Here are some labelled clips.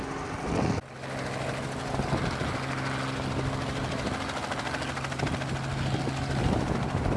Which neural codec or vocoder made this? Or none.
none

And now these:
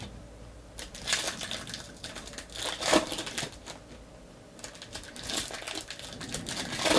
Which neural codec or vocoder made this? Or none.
none